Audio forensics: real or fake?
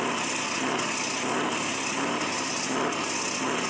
real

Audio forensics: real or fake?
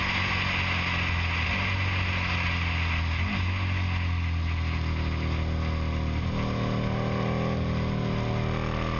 real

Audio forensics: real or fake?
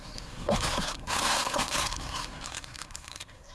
fake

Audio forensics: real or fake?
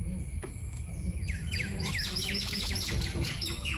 fake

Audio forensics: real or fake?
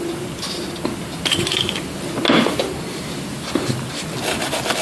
real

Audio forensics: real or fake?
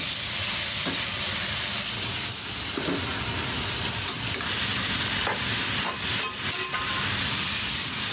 real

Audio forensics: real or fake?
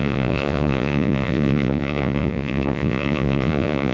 fake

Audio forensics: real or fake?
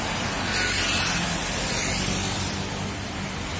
real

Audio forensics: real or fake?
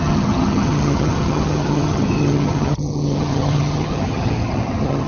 fake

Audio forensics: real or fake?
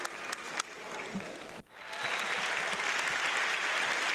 real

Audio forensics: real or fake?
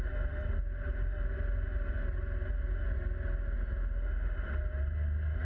real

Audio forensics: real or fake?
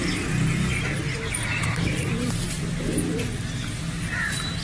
real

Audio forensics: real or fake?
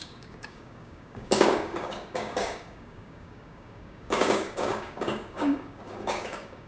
fake